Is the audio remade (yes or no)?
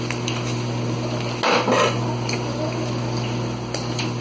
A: no